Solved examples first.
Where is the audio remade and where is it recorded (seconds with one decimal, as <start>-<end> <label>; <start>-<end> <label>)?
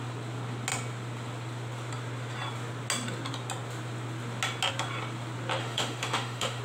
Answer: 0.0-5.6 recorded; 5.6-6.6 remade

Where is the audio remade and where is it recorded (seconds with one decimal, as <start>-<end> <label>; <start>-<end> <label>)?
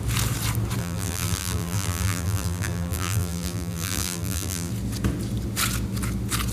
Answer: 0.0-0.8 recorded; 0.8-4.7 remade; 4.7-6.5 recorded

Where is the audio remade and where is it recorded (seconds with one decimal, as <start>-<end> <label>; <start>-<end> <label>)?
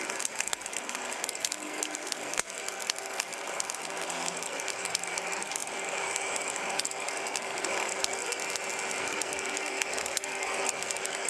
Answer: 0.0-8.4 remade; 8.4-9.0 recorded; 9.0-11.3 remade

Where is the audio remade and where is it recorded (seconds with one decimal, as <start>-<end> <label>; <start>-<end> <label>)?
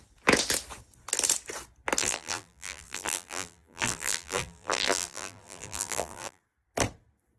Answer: 0.0-2.0 recorded; 2.0-6.4 remade; 6.4-7.4 recorded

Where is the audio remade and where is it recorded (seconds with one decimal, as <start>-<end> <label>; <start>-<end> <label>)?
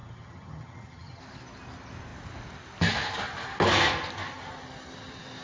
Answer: 0.0-1.2 remade; 1.2-5.4 recorded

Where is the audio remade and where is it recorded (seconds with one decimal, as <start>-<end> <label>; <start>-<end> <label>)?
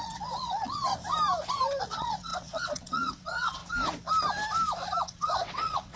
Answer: 0.0-0.9 remade; 0.9-1.8 recorded; 1.8-3.6 remade; 3.6-5.0 recorded; 5.0-6.0 remade